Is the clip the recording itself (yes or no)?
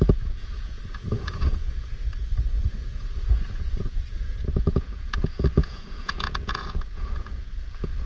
no